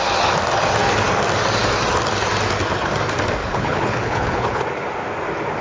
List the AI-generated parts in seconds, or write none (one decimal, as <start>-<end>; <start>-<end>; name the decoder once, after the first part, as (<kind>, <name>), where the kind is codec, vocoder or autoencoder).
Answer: 3.4-4.6 (codec, HILCodec)